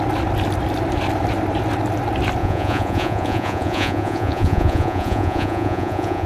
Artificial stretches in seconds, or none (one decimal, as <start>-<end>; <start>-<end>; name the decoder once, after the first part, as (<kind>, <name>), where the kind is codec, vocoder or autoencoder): 2.4-6.3 (vocoder, Vocos)